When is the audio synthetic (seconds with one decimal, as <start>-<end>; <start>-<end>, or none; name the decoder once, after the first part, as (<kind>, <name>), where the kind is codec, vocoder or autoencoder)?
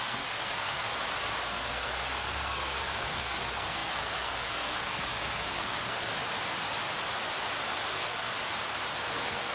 0.0-0.9 (codec, SNAC); 1.5-6.1; 7.9-8.3; 9.1-9.5